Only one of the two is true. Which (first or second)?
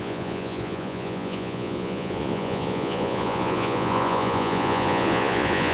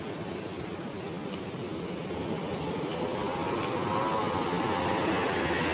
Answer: second